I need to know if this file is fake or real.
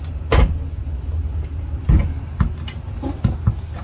real